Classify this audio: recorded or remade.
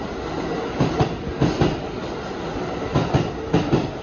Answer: recorded